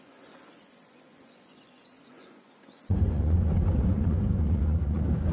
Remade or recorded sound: remade